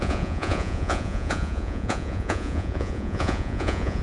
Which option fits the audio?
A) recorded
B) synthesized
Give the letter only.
B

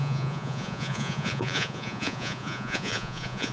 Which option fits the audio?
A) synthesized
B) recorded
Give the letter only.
A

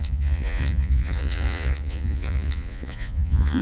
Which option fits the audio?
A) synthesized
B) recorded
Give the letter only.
A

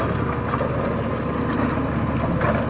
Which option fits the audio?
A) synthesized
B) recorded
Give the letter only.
B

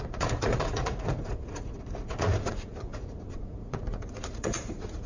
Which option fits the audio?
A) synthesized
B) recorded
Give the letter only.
A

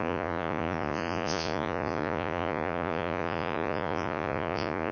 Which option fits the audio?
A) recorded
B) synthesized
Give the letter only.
B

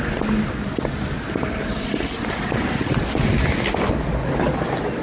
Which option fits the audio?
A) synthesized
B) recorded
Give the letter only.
B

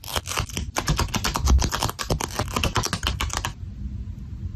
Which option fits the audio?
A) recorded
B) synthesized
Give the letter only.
A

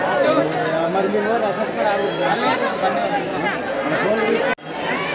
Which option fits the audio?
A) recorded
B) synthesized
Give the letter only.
A